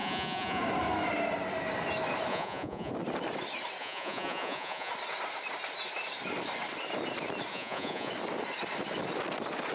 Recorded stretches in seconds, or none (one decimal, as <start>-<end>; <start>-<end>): 0.6-2.3; 2.9-3.8; 4.9-7.5; 8.1-9.7